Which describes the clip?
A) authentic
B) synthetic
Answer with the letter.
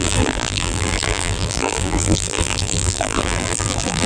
B